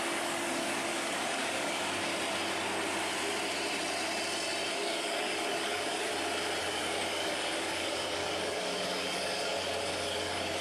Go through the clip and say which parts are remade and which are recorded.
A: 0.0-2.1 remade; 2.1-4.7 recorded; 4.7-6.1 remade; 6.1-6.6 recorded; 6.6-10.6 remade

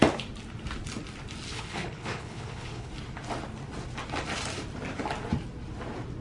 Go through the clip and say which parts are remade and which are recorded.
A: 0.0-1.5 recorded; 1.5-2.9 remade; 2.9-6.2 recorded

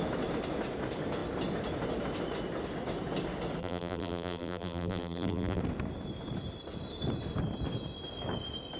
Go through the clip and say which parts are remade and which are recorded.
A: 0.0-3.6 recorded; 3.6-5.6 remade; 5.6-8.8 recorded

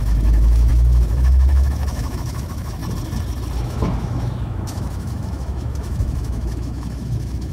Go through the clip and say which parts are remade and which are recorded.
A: 0.0-2.8 remade; 2.8-3.6 recorded; 3.6-7.5 remade

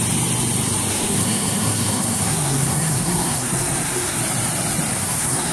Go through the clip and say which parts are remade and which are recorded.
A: 0.0-0.9 recorded; 0.9-4.2 remade; 4.2-4.9 recorded; 4.9-5.5 remade

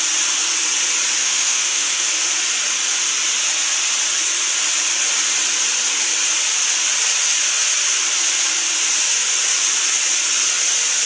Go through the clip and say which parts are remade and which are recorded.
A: 0.0-1.2 recorded; 1.2-2.1 remade; 2.1-11.1 recorded

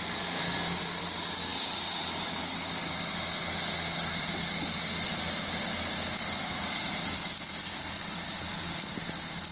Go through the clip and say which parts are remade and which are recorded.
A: 0.0-6.4 recorded; 6.4-7.3 remade; 7.3-9.5 recorded

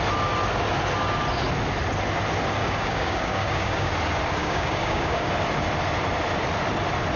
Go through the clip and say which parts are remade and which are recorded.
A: 0.0-2.6 recorded; 2.6-3.9 remade; 3.9-4.4 recorded; 4.4-5.3 remade; 5.3-7.2 recorded